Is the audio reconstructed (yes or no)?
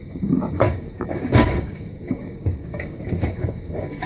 yes